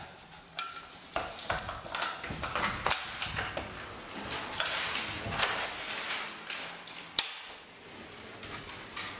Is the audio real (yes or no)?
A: yes